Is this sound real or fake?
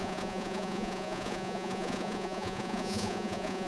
fake